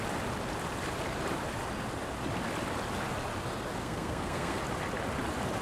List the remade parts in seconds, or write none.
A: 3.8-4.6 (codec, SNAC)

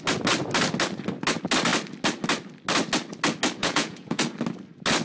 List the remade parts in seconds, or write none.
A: 3.6-4.2 (vocoder, Vocos)